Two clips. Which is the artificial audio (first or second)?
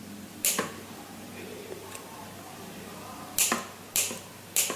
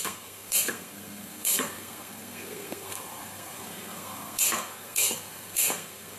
second